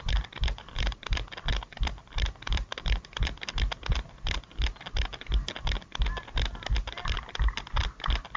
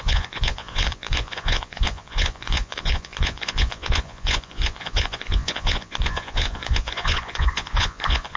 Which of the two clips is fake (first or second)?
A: second